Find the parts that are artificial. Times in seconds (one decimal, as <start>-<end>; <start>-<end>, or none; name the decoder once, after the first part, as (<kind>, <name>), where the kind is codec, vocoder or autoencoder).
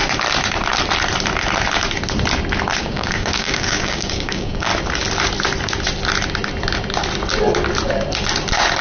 2.8-4.7 (codec, DAC)